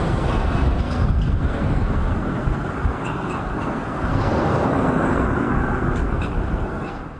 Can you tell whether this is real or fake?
fake